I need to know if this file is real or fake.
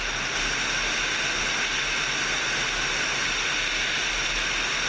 real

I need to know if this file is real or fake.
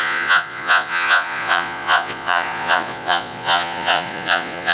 fake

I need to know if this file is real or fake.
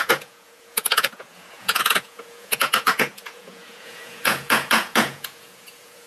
fake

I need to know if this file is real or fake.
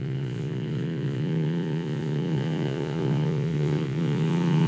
fake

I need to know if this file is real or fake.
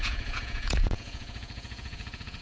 fake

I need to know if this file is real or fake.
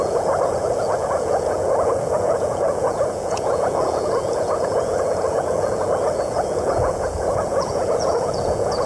fake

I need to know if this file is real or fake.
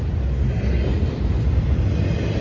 real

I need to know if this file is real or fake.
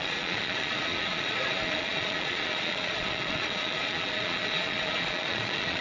fake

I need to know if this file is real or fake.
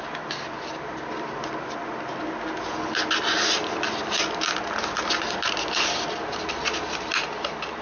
real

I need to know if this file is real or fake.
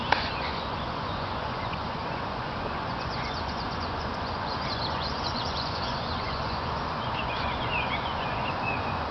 fake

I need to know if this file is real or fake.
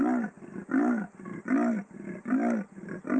real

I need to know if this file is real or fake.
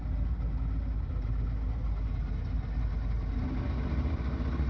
real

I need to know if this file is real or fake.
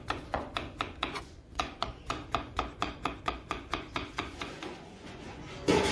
fake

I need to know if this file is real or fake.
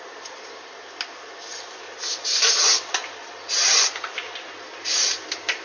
real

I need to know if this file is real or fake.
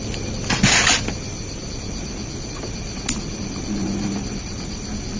real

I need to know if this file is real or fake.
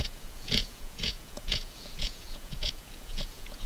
fake